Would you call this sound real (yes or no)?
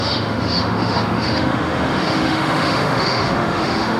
no